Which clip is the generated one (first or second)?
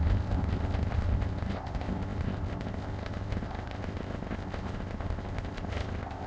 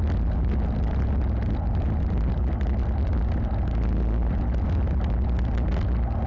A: first